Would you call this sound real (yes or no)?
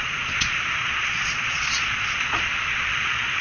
no